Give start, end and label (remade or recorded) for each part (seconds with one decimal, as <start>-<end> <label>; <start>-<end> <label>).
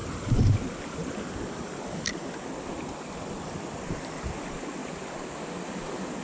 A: 0.0-6.2 recorded